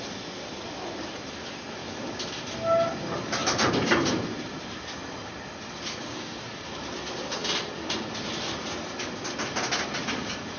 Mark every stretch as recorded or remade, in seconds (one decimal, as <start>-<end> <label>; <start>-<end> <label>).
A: 0.0-3.4 recorded; 3.4-4.4 remade; 4.4-10.6 recorded